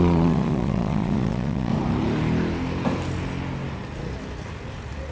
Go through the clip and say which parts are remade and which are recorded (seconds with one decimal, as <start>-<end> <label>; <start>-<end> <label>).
0.0-1.7 remade; 1.7-5.1 recorded